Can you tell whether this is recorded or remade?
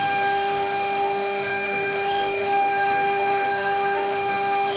remade